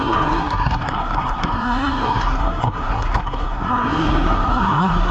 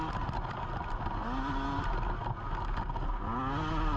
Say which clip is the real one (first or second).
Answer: second